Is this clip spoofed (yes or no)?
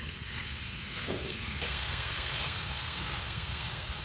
yes